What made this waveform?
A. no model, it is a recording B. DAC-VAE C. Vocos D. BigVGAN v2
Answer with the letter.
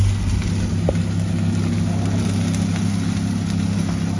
A